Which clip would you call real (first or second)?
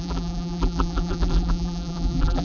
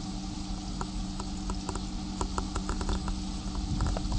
second